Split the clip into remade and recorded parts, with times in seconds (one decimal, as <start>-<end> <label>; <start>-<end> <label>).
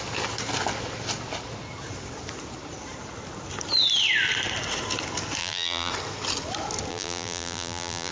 0.0-5.4 recorded; 5.4-5.9 remade; 5.9-6.9 recorded; 6.9-8.1 remade